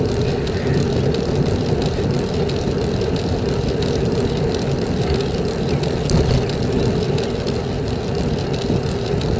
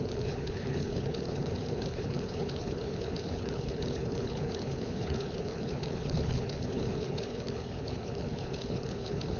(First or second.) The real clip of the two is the first